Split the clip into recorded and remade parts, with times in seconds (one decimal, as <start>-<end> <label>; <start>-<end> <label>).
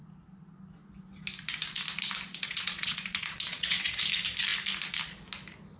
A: 0.0-2.3 recorded; 2.3-4.0 remade; 4.0-5.8 recorded